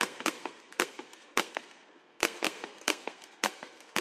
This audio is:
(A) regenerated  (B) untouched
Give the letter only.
A